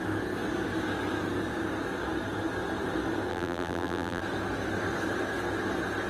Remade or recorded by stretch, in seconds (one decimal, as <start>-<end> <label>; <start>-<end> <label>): 0.0-3.3 recorded; 3.3-4.2 remade; 4.2-6.1 recorded